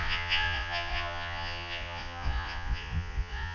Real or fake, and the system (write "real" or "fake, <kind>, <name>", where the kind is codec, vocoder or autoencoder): fake, vocoder, Vocos